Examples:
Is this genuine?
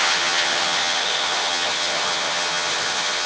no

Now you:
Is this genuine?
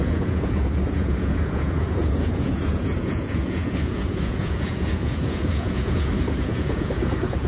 no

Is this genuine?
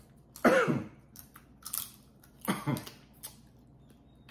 yes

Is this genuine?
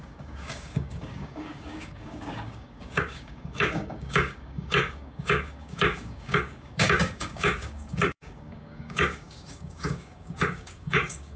no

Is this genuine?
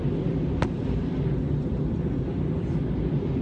yes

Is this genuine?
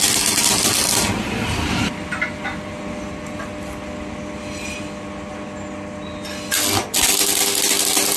yes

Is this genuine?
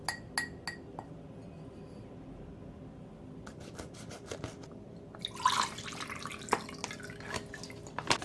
yes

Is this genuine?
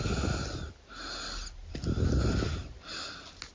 yes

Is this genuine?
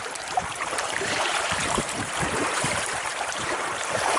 no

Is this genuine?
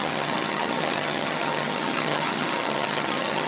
no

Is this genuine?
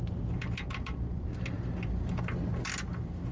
yes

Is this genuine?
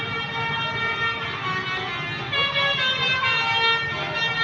yes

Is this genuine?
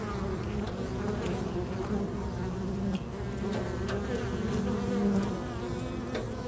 yes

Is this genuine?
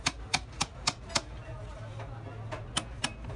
yes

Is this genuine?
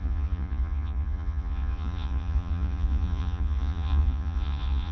no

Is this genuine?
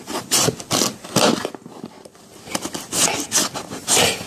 yes